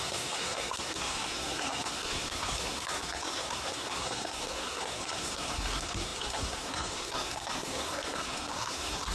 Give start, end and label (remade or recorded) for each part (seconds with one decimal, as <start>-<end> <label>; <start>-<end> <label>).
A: 0.0-9.1 remade